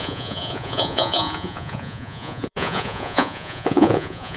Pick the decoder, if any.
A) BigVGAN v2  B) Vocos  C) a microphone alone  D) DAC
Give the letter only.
B